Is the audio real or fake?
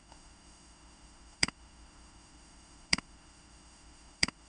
fake